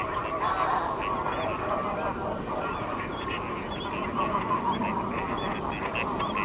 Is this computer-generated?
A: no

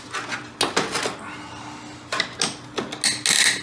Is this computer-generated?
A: no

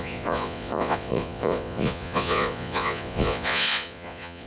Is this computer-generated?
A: yes